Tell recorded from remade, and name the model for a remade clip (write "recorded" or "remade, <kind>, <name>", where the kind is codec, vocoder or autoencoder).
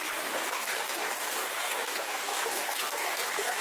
remade, codec, DAC